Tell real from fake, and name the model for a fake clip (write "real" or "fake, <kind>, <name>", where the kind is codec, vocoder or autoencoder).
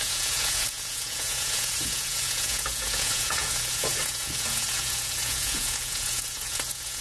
fake, vocoder, Vocos